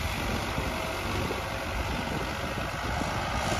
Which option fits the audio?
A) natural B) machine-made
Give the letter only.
A